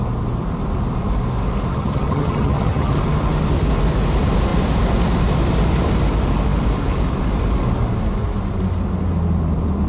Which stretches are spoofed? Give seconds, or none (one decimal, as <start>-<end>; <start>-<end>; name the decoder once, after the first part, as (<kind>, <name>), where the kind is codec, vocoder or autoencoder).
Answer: 1.7-3.0 (vocoder, HiFi-GAN)